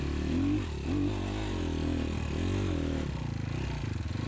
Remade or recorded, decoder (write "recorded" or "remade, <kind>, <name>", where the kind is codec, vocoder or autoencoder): recorded